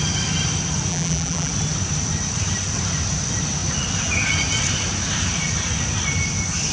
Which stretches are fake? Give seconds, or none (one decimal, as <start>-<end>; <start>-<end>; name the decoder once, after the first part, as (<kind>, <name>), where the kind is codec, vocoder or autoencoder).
0.9-1.5 (vocoder, BigVGAN v2)